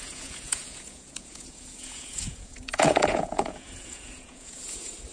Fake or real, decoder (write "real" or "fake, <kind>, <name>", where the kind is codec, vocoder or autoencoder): fake, vocoder, Vocos